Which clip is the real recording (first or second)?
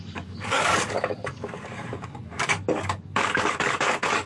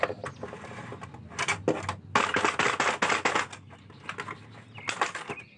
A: second